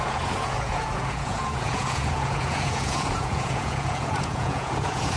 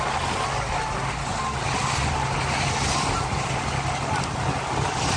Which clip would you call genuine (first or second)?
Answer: second